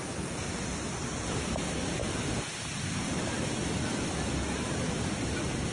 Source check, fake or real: real